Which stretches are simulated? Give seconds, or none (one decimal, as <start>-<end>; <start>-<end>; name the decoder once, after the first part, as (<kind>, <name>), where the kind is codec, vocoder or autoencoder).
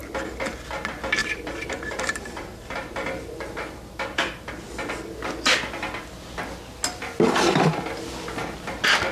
1.2-4.5 (vocoder, BigVGAN v2)